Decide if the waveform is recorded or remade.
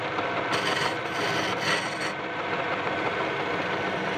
recorded